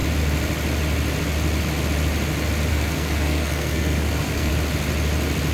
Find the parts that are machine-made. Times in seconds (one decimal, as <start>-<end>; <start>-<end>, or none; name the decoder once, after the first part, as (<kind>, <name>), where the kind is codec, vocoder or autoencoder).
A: 2.7-4.5 (codec, SNAC)